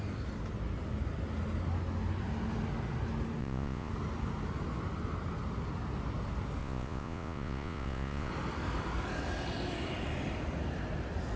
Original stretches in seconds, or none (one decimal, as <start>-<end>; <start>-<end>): 0.0-3.4; 3.9-6.6; 8.3-11.4

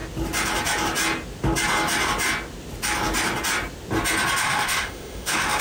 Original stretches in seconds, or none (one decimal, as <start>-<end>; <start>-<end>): 0.0-4.4